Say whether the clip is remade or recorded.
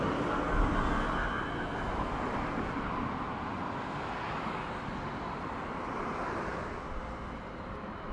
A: recorded